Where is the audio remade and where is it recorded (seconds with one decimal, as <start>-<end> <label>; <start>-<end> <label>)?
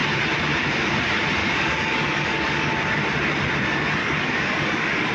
0.0-1.4 recorded; 1.4-2.7 remade; 2.7-4.0 recorded; 4.0-5.1 remade